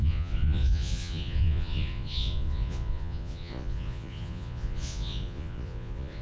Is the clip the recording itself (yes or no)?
no